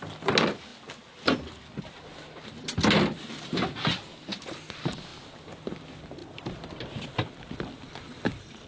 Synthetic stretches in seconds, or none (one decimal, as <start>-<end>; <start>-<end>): none